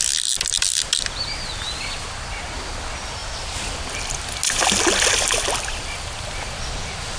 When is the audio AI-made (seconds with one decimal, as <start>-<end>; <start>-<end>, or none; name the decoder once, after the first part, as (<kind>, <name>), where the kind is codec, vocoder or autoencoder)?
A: none